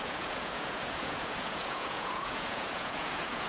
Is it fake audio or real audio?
fake